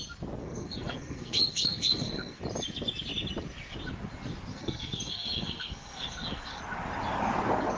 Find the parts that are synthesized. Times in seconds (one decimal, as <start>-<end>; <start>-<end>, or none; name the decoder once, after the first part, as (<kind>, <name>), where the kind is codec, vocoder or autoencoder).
0.4-2.4 (codec, SNAC); 4.5-6.6